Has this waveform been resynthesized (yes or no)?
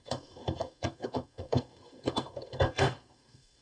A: yes